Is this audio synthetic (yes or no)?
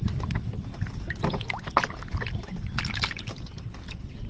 no